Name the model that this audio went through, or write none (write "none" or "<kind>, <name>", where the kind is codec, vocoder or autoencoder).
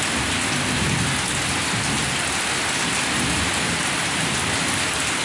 none